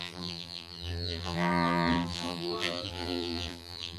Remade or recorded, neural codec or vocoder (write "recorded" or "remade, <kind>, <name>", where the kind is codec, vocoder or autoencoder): remade, vocoder, BigVGAN v2